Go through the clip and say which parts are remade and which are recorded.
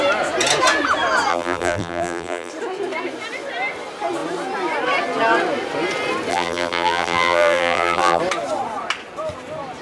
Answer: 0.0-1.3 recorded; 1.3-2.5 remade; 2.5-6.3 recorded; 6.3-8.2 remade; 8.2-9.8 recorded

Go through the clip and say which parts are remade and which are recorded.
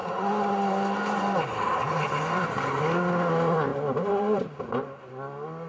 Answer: 0.0-2.8 remade; 2.8-3.7 recorded; 3.7-5.1 remade; 5.1-5.7 recorded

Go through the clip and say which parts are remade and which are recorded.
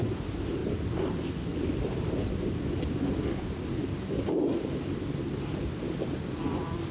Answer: 0.0-6.9 recorded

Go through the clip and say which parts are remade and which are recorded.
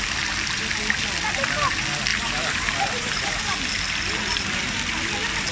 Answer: 0.0-2.1 recorded; 2.1-3.4 remade; 3.4-5.5 recorded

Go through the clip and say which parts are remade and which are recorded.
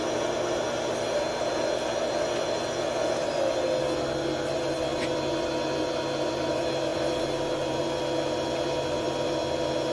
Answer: 0.0-9.9 recorded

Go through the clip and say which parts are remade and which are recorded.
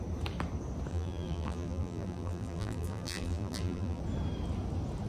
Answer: 0.0-0.9 recorded; 0.9-4.0 remade; 4.0-5.1 recorded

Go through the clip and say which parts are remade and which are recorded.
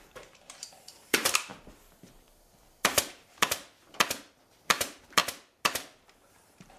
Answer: 0.0-1.5 remade; 1.5-4.6 recorded; 4.6-5.2 remade; 5.2-6.3 recorded; 6.3-6.8 remade